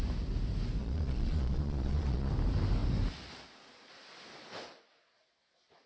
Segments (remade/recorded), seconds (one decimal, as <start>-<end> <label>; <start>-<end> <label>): 0.0-0.8 recorded; 0.8-2.3 remade; 2.3-5.9 recorded